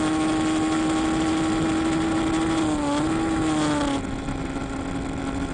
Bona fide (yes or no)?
yes